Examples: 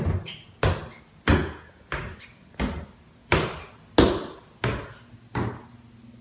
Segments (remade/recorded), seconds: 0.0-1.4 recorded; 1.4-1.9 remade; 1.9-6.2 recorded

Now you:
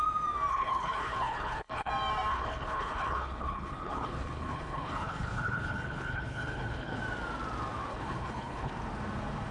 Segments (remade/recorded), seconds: 0.0-0.5 recorded; 0.5-1.9 remade; 1.9-2.3 recorded; 2.3-7.0 remade; 7.0-7.9 recorded; 7.9-8.7 remade; 8.7-9.5 recorded

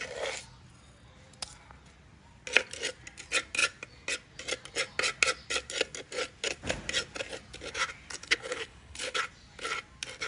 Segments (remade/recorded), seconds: 0.0-8.2 recorded; 8.2-9.2 remade; 9.2-10.3 recorded

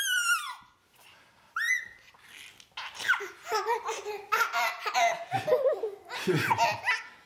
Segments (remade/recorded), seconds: 0.0-7.3 recorded

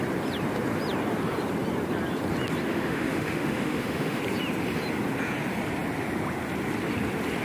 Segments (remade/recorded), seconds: 0.0-2.7 recorded; 2.7-4.2 remade; 4.2-7.4 recorded